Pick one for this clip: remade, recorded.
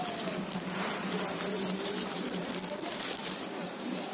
remade